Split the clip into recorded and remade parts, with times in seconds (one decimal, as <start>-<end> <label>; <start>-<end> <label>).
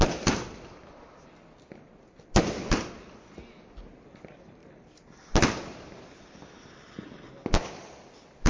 0.0-8.5 recorded